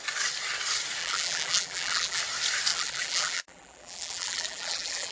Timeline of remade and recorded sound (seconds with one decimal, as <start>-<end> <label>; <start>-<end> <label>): 0.0-1.0 recorded; 1.0-2.2 remade; 2.2-2.7 recorded; 2.7-5.1 remade